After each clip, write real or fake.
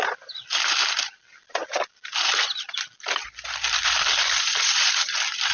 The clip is fake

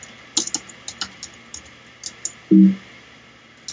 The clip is real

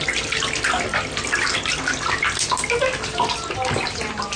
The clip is real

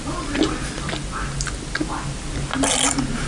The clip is real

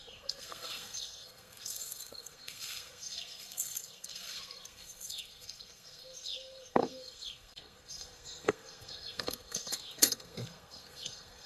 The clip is fake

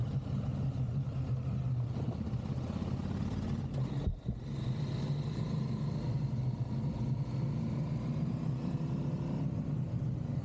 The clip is real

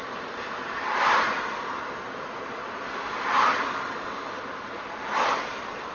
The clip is real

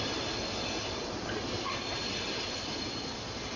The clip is real